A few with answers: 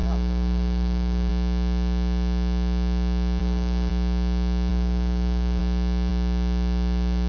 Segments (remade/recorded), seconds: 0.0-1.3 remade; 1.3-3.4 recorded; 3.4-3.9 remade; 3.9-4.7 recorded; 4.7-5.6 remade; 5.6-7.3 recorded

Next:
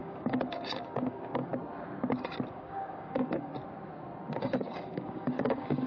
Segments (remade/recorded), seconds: 0.0-1.5 remade; 1.5-2.5 recorded; 2.5-3.5 remade; 3.5-4.4 recorded; 4.4-5.9 remade

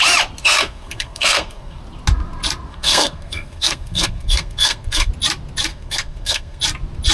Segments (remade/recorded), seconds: 0.0-0.4 recorded; 0.4-1.8 remade; 1.8-2.7 recorded; 2.7-5.1 remade; 5.1-5.7 recorded; 5.7-6.6 remade; 6.6-7.1 recorded